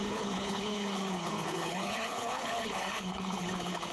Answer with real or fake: fake